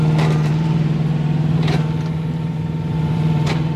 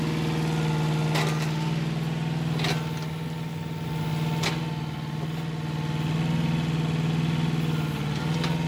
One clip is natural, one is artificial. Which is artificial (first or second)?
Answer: first